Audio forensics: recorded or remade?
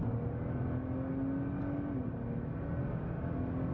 recorded